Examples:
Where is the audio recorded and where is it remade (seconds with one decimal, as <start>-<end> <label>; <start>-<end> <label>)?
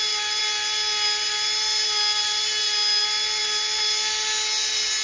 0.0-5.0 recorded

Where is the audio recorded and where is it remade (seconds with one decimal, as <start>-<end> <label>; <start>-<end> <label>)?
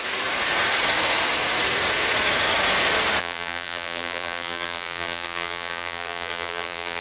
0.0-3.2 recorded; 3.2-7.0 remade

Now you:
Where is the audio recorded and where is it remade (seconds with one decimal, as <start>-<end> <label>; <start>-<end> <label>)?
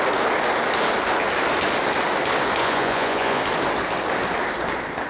0.0-2.6 recorded; 2.6-3.4 remade; 3.4-5.1 recorded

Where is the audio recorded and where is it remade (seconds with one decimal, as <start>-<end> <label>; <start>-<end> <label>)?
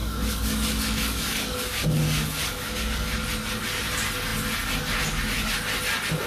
0.0-3.1 remade; 3.1-6.3 recorded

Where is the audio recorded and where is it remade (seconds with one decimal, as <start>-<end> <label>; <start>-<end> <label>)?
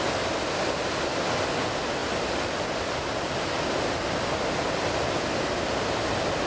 0.0-6.5 recorded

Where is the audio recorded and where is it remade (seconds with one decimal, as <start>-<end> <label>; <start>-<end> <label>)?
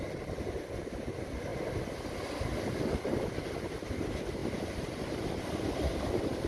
0.0-6.5 recorded